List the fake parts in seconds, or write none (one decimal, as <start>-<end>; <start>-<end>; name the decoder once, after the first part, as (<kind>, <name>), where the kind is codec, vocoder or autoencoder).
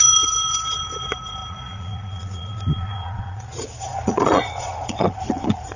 0.0-5.8 (vocoder, Vocos)